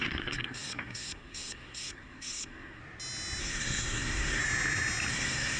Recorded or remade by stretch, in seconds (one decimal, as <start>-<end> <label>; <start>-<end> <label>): 0.0-2.8 remade; 2.8-3.4 recorded; 3.4-4.4 remade; 4.4-5.1 recorded; 5.1-5.6 remade